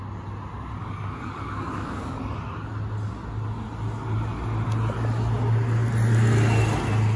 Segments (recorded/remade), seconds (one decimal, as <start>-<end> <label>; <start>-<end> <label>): 0.0-0.8 recorded; 0.8-2.2 remade; 2.2-7.2 recorded